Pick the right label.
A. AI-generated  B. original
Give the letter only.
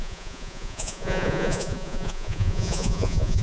A